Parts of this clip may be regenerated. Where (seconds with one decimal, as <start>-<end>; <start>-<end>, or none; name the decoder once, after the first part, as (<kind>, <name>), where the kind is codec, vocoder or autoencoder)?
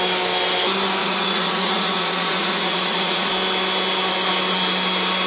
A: 1.0-3.3 (vocoder, Vocos)